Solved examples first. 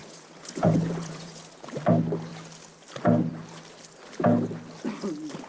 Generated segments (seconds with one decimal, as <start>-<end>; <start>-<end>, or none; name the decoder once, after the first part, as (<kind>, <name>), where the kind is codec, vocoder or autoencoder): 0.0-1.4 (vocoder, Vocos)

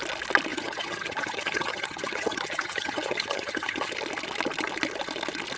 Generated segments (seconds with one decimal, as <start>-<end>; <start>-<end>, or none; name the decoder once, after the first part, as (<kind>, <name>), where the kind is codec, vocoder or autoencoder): 0.5-3.9 (vocoder, HiFi-GAN)

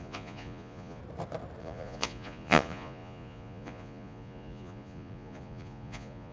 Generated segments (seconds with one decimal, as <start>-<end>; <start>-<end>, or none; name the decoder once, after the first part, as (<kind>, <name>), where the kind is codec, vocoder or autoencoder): 0.0-1.0 (vocoder, Vocos); 1.6-6.3

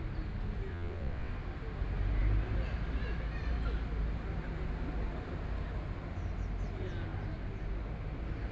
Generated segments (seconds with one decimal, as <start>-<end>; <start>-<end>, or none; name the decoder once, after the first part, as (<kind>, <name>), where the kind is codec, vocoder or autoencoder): 0.7-1.3 (vocoder, WaveNeXt)

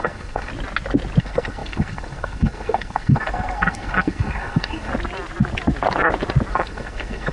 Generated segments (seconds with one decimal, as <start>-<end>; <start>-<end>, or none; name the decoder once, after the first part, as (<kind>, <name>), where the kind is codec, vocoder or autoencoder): 0.0-0.5 (codec, SNAC); 1.2-4.9; 6.5-7.3

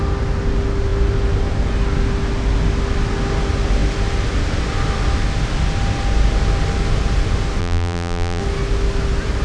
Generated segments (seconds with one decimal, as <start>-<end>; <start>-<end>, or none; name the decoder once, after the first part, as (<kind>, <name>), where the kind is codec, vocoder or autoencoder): 7.6-8.4 (vocoder, BigVGAN v2)

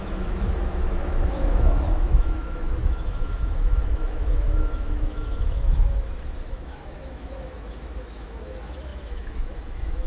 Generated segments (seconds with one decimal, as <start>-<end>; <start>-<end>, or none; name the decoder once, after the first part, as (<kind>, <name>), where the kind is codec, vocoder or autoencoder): 0.0-10.1 (autoencoder, DAC-VAE)